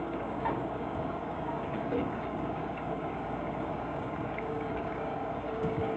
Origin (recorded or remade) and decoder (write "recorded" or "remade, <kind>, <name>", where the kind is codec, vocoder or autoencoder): remade, codec, DAC